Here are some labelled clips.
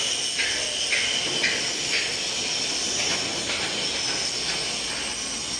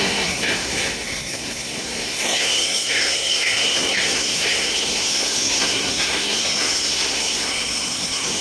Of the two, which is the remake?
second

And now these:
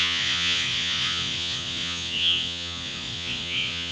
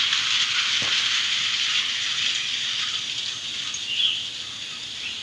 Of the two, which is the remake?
first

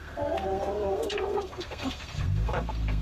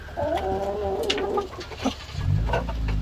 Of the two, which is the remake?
first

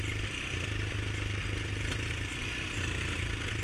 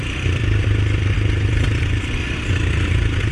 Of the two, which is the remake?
second